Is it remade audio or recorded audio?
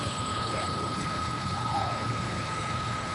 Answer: remade